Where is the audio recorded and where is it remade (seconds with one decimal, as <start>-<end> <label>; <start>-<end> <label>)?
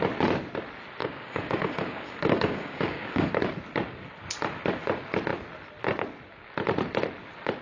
0.0-1.0 recorded; 1.0-3.3 remade; 3.3-7.6 recorded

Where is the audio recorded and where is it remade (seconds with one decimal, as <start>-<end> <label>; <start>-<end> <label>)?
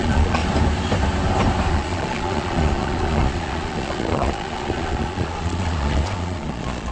0.0-0.4 remade; 0.4-1.7 recorded; 1.7-6.9 remade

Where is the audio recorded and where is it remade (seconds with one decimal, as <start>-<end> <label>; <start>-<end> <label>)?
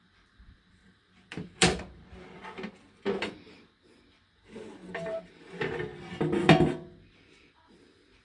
0.0-8.2 remade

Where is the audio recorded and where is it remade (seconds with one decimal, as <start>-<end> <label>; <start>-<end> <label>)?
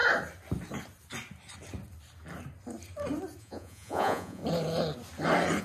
0.0-3.4 recorded; 3.4-4.4 remade; 4.4-5.6 recorded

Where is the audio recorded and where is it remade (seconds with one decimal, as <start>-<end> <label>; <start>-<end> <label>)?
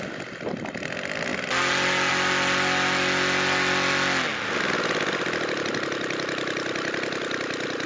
0.0-7.9 recorded